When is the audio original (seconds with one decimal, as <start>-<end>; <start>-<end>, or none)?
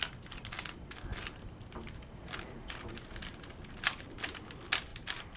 0.0-1.1; 4.2-4.9